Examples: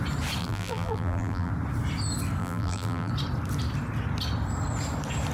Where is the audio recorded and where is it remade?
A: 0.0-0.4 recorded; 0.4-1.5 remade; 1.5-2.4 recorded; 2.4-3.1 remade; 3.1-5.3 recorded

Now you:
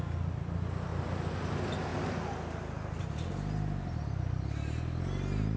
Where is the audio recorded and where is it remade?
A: 0.0-5.6 recorded

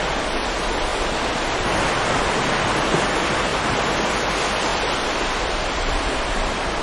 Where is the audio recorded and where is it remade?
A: 0.0-4.7 recorded; 4.7-5.5 remade; 5.5-6.8 recorded

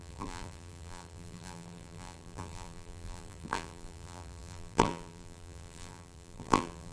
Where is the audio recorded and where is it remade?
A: 0.0-6.9 remade